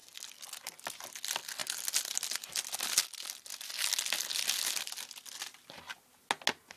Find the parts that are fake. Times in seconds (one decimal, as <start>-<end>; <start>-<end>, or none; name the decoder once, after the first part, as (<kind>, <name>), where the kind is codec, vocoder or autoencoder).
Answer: none